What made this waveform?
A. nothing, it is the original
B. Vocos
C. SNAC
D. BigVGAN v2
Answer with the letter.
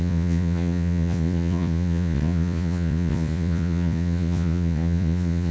B